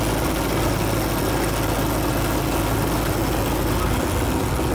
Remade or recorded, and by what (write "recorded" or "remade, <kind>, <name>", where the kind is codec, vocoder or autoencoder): recorded